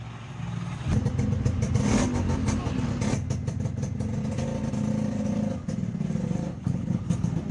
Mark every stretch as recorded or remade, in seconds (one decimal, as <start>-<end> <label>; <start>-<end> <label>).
0.0-6.5 recorded; 6.5-7.0 remade; 7.0-7.5 recorded